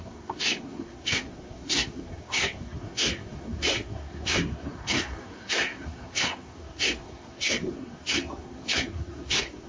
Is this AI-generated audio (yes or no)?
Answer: yes